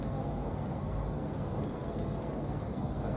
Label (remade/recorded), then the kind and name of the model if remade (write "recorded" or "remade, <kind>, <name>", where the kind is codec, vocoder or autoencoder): remade, codec, SNAC